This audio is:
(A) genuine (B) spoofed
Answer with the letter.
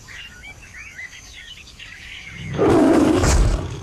B